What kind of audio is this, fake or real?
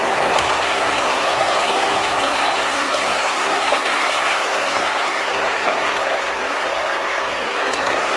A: fake